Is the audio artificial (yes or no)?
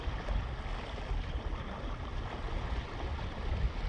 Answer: no